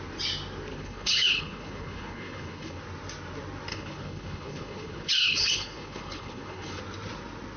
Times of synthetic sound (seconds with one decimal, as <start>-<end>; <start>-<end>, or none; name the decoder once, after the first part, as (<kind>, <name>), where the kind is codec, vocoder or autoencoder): 0.7-2.8 (codec, HILCodec); 3.7-6.8